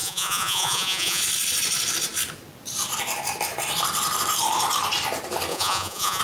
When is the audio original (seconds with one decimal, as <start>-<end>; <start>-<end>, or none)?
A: 1.2-5.5